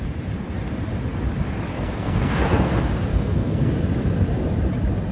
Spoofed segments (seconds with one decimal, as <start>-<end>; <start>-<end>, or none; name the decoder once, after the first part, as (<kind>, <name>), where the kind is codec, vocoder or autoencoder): 1.7-2.7 (codec, SNAC); 3.1-3.7